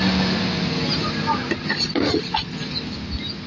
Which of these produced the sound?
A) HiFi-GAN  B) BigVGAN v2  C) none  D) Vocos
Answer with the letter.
C